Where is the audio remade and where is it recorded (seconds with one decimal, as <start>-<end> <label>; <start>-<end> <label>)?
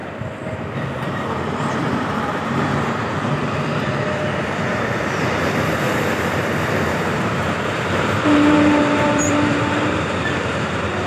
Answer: 0.0-0.8 recorded; 0.8-11.1 remade